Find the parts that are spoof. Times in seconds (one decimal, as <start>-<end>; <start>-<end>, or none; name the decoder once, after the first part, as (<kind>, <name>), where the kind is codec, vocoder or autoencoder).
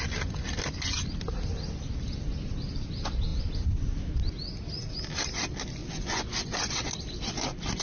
5.8-6.7 (vocoder, Vocos)